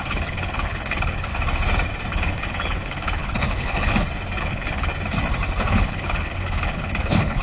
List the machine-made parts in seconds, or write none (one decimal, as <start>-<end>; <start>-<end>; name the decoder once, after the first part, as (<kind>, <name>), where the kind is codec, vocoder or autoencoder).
0.0-1.3 (codec, HILCodec); 2.1-3.9; 4.4-4.9; 5.7-7.4